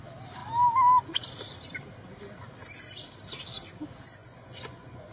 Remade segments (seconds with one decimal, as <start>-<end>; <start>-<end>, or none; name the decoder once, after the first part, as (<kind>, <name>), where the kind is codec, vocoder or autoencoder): 4.2-5.1 (vocoder, Vocos)